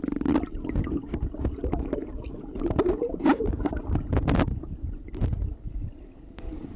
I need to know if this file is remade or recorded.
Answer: recorded